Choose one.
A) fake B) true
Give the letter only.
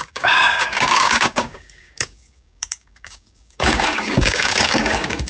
A